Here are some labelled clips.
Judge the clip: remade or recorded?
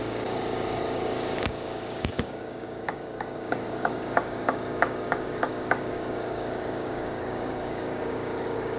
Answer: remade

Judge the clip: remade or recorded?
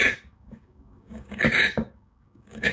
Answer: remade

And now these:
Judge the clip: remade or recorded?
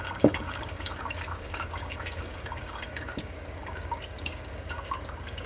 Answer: remade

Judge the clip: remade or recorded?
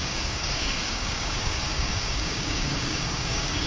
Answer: remade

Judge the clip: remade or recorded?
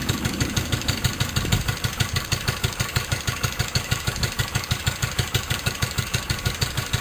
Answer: remade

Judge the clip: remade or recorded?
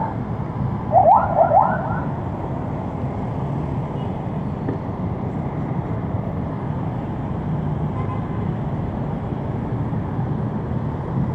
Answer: recorded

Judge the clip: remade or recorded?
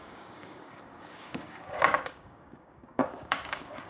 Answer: remade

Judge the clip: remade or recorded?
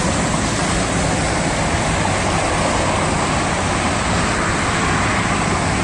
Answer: recorded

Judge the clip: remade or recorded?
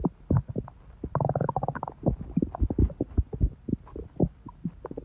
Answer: recorded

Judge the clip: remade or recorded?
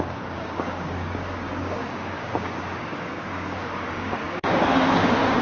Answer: remade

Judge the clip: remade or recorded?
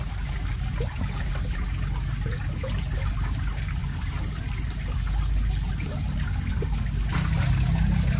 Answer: recorded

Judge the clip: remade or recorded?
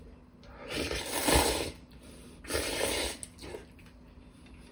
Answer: recorded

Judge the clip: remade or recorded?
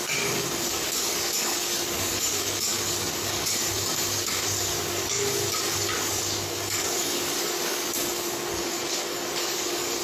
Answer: remade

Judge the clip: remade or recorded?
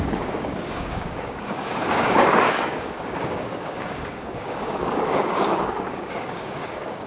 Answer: remade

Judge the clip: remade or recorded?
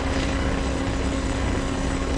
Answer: remade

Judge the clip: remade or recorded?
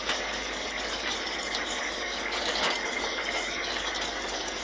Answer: remade